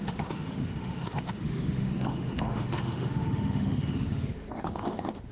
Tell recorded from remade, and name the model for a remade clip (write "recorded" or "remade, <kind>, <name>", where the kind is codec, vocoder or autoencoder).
remade, autoencoder, DAC-VAE